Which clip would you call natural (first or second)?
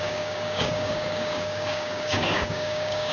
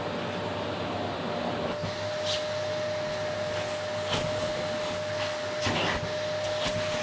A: second